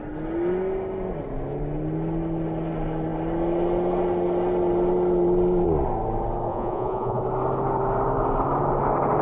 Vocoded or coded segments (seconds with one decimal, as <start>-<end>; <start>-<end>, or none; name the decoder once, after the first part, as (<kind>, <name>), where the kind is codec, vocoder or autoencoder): 6.5-7.2 (vocoder, Vocos)